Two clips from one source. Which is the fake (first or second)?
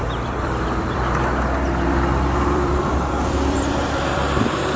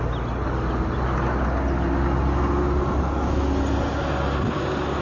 first